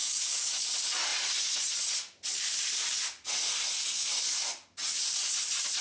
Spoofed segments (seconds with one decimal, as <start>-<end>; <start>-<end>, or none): 0.0-0.7